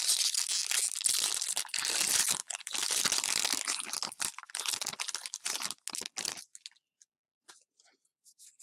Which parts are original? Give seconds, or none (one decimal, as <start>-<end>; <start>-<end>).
0.0-2.4; 3.0-8.6